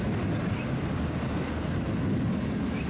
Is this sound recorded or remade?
recorded